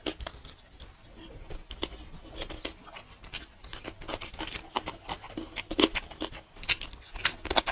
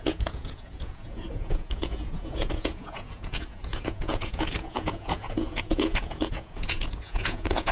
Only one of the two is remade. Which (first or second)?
second